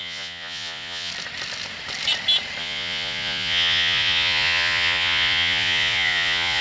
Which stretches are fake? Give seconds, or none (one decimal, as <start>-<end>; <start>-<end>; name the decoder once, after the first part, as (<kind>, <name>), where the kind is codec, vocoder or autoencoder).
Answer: 0.0-1.1 (vocoder, Vocos); 2.6-6.6